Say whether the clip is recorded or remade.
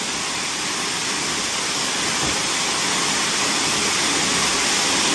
recorded